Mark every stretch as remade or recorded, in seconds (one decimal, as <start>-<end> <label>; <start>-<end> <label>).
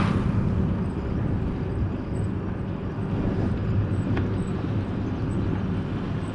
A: 0.0-6.3 recorded